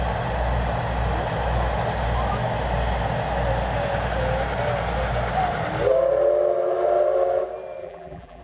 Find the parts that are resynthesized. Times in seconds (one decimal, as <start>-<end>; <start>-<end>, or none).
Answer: 7.8-8.4